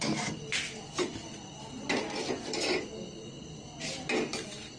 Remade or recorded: recorded